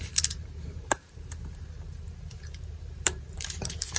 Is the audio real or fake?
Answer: fake